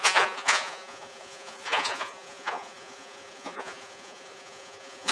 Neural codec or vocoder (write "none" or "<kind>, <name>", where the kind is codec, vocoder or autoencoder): vocoder, Vocos